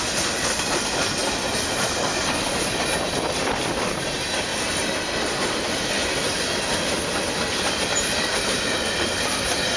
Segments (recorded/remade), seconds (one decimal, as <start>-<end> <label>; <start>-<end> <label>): 0.0-9.8 recorded